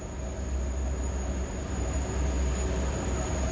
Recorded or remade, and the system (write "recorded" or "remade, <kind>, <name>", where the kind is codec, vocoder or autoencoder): recorded